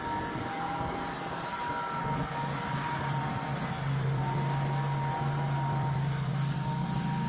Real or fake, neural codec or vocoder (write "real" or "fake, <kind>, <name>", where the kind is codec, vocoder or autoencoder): real